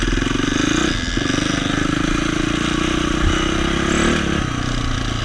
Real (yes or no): yes